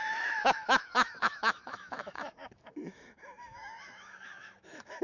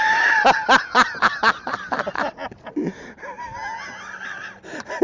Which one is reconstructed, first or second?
first